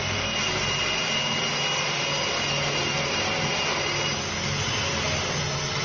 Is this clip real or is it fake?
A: real